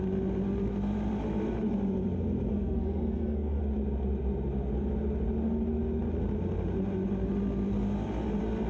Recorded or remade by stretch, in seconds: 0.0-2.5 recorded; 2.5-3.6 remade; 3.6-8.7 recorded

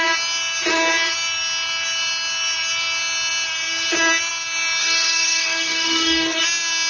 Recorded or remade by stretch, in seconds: 0.0-4.8 recorded; 4.8-6.4 remade; 6.4-6.9 recorded

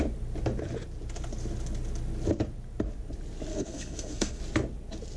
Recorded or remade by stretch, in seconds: 0.0-3.5 recorded; 3.5-4.4 remade; 4.4-5.2 recorded

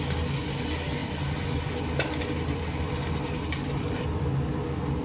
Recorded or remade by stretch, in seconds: 0.0-5.0 recorded

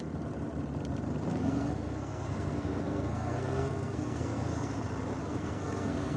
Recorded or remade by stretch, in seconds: 0.0-1.3 recorded; 1.3-4.7 remade; 4.7-5.2 recorded; 5.2-6.2 remade

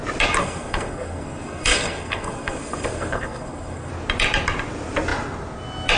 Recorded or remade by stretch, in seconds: 0.0-0.4 recorded; 0.4-3.9 remade; 3.9-6.0 recorded

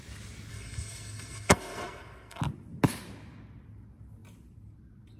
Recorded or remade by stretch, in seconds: 0.0-0.5 recorded; 0.5-2.4 remade; 2.4-5.2 recorded

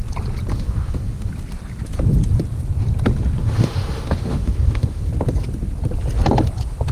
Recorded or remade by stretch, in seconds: 0.0-0.5 recorded; 0.5-1.3 remade; 1.3-3.4 recorded; 3.4-5.1 remade; 5.1-6.9 recorded